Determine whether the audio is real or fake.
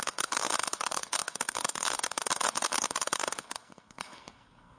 fake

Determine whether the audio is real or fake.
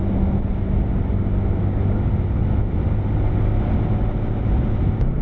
real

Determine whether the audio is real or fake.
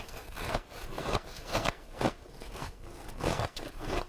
fake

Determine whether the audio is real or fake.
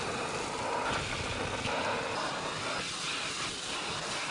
real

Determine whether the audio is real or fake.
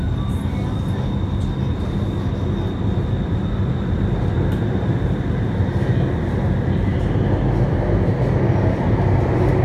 real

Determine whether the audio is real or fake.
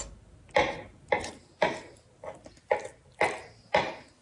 real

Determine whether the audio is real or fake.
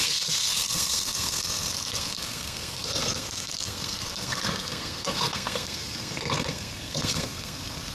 fake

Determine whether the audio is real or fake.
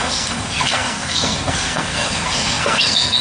fake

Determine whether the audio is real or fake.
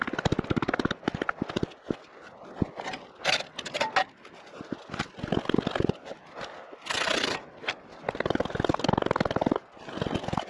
real